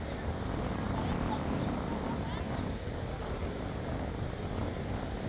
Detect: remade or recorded recorded